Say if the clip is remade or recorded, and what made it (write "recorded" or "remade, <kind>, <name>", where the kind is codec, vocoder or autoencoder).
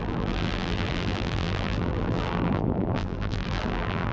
remade, vocoder, BigVGAN v2